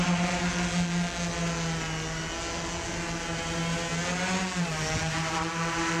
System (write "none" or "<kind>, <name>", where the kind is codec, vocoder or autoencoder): none